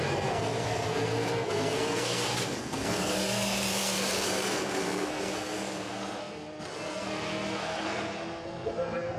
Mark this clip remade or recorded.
remade